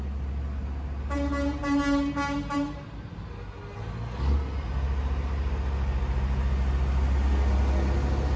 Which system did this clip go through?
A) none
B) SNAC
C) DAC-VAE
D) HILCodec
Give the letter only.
A